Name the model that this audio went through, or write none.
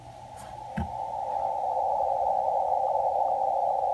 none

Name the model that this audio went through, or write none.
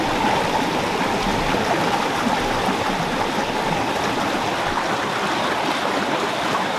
none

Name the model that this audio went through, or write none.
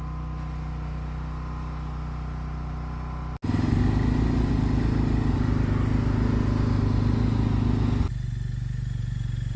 none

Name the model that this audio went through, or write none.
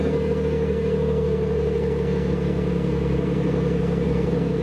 codec, SNAC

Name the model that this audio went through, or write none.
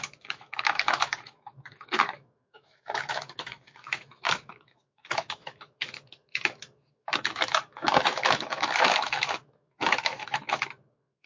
autoencoder, DAC-VAE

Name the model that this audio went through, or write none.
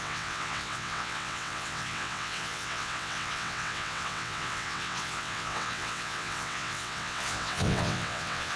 vocoder, WaveNeXt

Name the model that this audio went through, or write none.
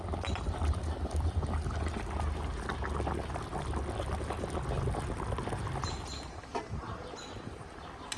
none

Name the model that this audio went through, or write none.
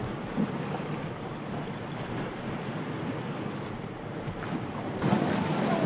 none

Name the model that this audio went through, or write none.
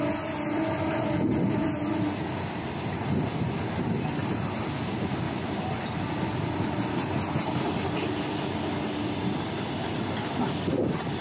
none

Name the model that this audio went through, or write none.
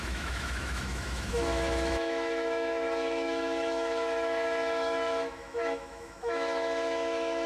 autoencoder, DAC-VAE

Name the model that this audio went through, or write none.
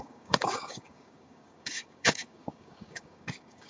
codec, DAC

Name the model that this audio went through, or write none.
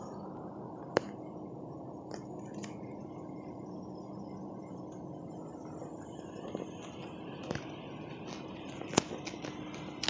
none